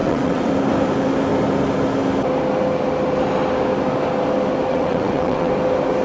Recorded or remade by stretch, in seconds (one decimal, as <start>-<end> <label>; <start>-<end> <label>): 0.0-0.5 remade; 0.5-4.7 recorded; 4.7-5.5 remade; 5.5-6.0 recorded